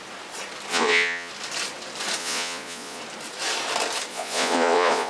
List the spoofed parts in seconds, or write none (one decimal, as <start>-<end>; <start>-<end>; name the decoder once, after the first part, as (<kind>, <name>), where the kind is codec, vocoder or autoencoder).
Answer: 0.7-1.3 (vocoder, Vocos); 2.2-3.0; 4.1-5.1